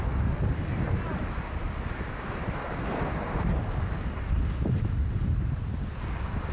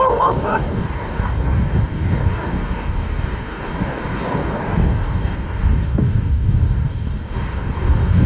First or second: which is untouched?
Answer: first